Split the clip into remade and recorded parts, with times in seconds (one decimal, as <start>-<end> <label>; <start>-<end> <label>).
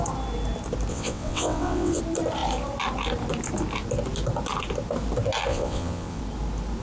0.0-0.9 recorded; 0.9-2.0 remade; 2.0-5.5 recorded; 5.5-6.2 remade; 6.2-6.8 recorded